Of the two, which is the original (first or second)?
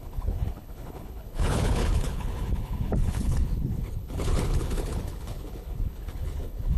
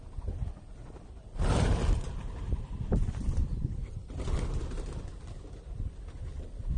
second